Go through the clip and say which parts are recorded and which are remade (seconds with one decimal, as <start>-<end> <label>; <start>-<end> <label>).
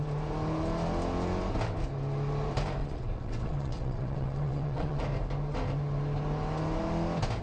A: 0.0-2.8 recorded; 2.8-5.0 remade; 5.0-7.4 recorded